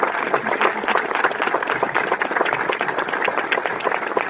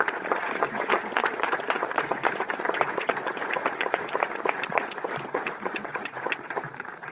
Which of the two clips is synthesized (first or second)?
second